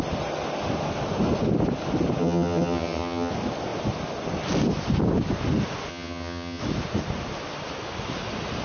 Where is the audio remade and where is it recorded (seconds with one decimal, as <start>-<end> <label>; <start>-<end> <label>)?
0.0-2.2 recorded; 2.2-3.3 remade; 3.3-5.9 recorded; 5.9-6.6 remade; 6.6-8.6 recorded